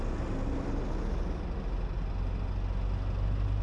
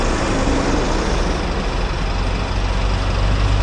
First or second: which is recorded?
first